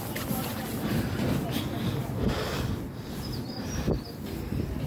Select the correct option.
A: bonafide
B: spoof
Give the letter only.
A